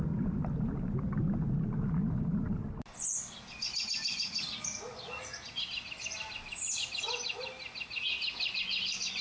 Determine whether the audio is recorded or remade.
recorded